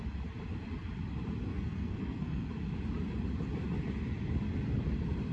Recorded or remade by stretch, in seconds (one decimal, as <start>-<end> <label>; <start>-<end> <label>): 0.0-1.5 recorded; 1.5-2.5 remade; 2.5-5.3 recorded